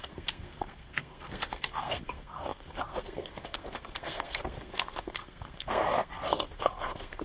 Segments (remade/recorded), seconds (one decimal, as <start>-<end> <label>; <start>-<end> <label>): 0.0-7.2 remade